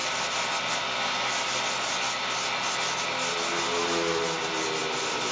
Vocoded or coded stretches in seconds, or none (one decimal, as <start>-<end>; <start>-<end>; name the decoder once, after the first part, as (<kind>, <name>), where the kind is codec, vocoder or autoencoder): none